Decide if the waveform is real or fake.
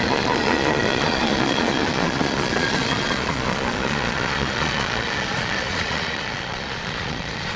fake